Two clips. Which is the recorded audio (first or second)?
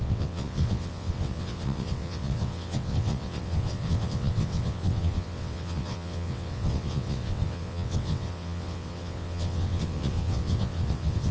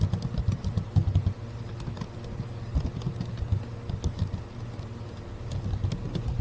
second